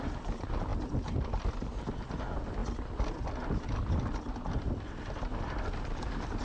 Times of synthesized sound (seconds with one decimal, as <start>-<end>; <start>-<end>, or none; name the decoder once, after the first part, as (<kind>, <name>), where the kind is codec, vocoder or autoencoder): 0.7-2.2 (vocoder, BigVGAN v2)